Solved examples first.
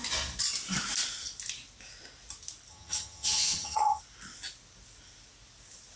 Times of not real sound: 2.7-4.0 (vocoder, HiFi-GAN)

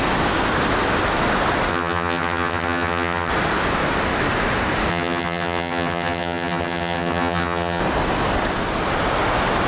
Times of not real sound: 1.7-3.3 (vocoder, HiFi-GAN); 4.9-7.8

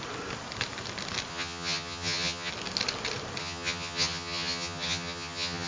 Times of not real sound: 1.3-2.5 (vocoder, HiFi-GAN); 3.4-5.7

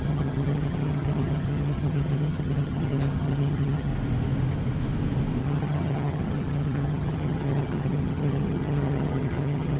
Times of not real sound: 0.0-3.9 (vocoder, HiFi-GAN); 5.4-9.8

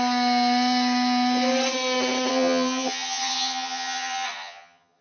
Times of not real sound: 2.3-5.0 (vocoder, HiFi-GAN)

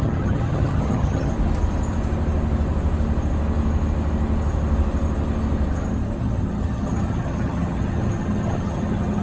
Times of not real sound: 0.0-1.3 (vocoder, HiFi-GAN); 6.2-9.2

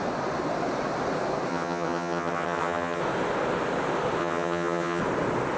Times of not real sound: 1.5-3.0 (vocoder, HiFi-GAN); 4.2-5.0

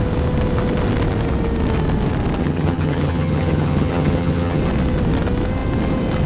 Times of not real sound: 2.4-4.6 (vocoder, HiFi-GAN)